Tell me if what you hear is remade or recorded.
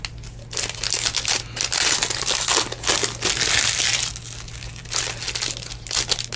recorded